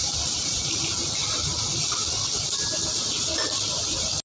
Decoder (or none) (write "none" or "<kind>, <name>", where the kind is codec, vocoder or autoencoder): none